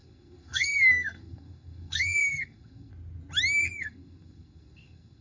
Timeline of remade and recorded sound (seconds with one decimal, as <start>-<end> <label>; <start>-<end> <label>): 0.0-2.9 remade; 2.9-3.8 recorded; 3.8-5.2 remade